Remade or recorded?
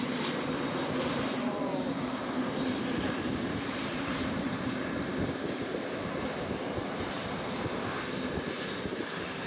remade